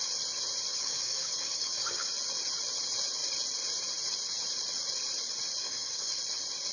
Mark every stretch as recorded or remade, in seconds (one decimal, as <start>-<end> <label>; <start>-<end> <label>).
0.0-0.7 recorded; 0.7-2.1 remade; 2.1-5.6 recorded; 5.6-6.2 remade; 6.2-6.7 recorded